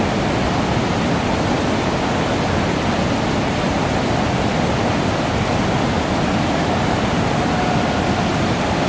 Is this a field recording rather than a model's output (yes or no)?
yes